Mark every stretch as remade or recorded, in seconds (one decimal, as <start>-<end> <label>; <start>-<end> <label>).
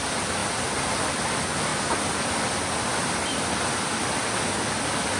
0.0-5.2 recorded